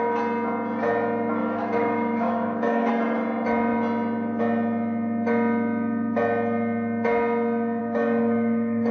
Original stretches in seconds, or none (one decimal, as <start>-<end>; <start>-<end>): 0.0-1.4; 2.9-7.8